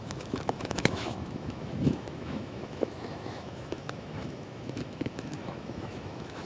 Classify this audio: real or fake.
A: fake